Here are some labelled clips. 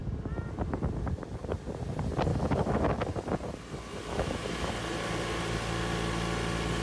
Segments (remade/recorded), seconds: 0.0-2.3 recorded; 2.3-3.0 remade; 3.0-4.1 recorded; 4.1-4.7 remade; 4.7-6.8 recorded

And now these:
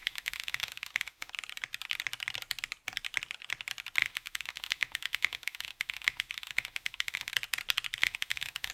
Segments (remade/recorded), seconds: 0.0-1.3 remade; 1.3-4.0 recorded; 4.0-7.3 remade; 7.3-8.0 recorded; 8.0-8.7 remade

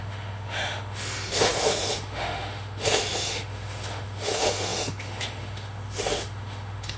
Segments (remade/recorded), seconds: 0.0-7.0 remade

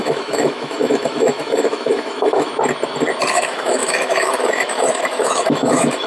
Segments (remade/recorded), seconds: 0.0-2.5 remade; 2.5-3.3 recorded; 3.3-6.1 remade

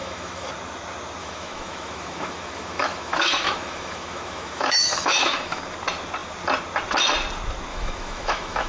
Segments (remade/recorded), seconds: 0.0-0.5 remade; 0.5-1.2 recorded; 1.2-5.6 remade; 5.6-7.7 recorded; 7.7-8.7 remade

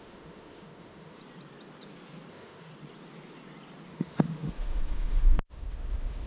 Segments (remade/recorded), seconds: 0.0-1.2 remade; 1.2-2.3 recorded; 2.3-2.7 remade; 2.7-3.9 recorded; 3.9-6.3 remade

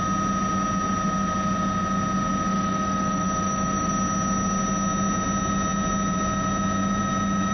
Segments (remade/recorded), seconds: 0.0-2.5 recorded; 2.5-3.9 remade; 3.9-7.5 recorded